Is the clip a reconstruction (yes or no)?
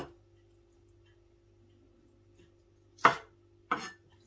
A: no